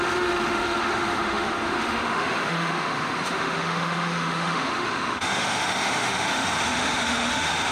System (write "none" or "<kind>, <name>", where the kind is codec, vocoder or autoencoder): autoencoder, DAC-VAE